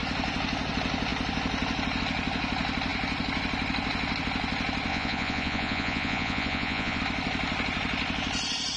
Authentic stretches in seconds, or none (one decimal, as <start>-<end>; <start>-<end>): 0.0-4.9; 7.0-8.8